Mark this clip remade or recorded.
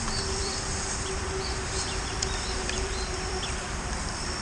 remade